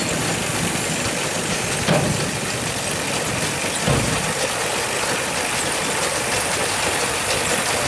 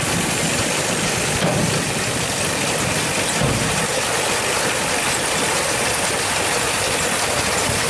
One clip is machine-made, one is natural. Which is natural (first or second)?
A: first